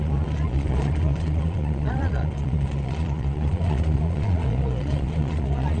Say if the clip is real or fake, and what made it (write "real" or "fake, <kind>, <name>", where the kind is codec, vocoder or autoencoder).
fake, vocoder, Vocos